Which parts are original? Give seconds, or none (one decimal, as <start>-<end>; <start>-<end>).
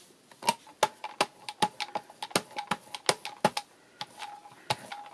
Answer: 0.0-5.1